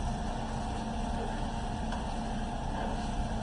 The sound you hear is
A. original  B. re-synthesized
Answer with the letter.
A